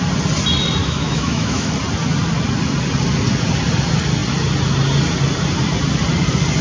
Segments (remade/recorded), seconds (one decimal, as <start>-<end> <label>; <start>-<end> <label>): 0.0-0.8 recorded; 0.8-1.7 remade; 1.7-6.6 recorded